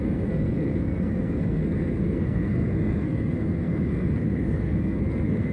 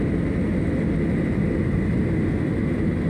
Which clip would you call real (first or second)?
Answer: second